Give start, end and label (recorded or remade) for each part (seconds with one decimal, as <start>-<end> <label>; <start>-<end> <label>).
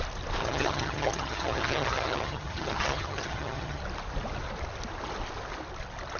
0.0-0.4 recorded; 0.4-3.8 remade; 3.8-6.2 recorded